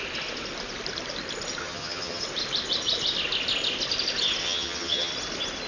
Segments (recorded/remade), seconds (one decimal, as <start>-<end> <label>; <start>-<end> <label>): 0.0-1.6 recorded; 1.6-2.2 remade; 2.2-4.4 recorded; 4.4-5.1 remade; 5.1-5.7 recorded

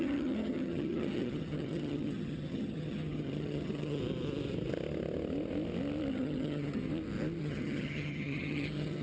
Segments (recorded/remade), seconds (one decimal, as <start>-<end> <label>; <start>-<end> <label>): 0.0-4.0 remade; 4.0-6.1 recorded; 6.1-6.8 remade; 6.8-7.4 recorded; 7.4-9.0 remade